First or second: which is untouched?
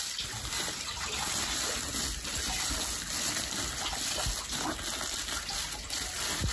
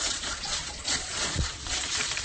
first